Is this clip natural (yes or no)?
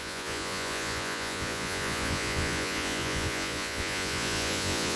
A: no